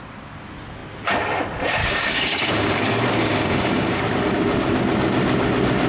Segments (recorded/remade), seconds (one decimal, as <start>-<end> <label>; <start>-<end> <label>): 0.0-1.8 recorded; 1.8-4.0 remade; 4.0-5.9 recorded